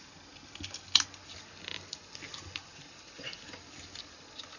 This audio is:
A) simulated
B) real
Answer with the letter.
B